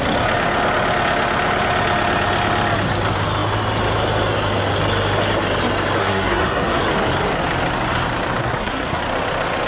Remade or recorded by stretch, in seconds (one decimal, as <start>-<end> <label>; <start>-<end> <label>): 0.0-6.0 recorded; 6.0-6.8 remade; 6.8-8.4 recorded; 8.4-9.0 remade; 9.0-9.7 recorded